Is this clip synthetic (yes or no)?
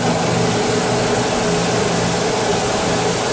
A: no